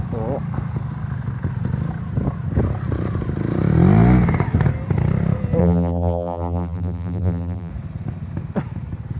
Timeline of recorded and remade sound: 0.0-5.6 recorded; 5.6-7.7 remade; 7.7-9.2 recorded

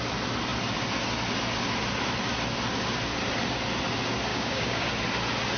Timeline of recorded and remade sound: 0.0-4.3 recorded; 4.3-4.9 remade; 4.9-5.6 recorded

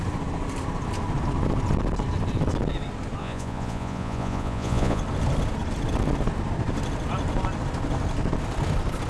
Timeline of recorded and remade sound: 0.0-3.2 recorded; 3.2-5.0 remade; 5.0-9.1 recorded